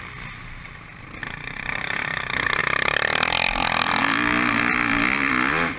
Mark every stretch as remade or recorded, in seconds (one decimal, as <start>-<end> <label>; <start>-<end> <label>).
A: 0.0-1.2 recorded; 1.2-2.6 remade; 2.6-5.8 recorded